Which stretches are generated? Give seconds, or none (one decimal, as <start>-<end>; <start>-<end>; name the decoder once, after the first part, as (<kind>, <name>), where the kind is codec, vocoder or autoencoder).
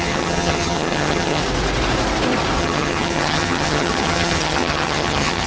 0.0-1.4 (vocoder, HiFi-GAN); 2.6-5.5